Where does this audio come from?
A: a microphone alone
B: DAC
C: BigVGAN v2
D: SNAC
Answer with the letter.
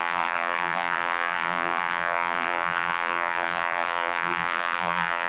C